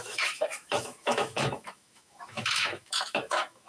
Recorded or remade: remade